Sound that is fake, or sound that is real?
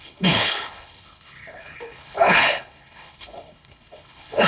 fake